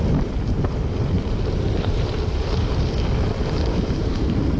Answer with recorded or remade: remade